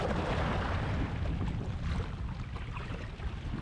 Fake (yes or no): no